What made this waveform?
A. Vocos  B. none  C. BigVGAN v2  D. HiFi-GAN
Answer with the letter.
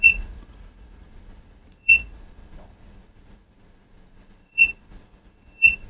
A